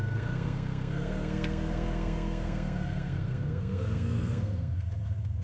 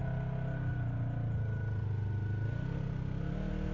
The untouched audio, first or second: second